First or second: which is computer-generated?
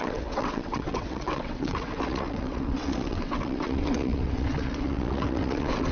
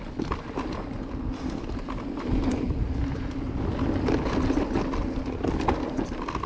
first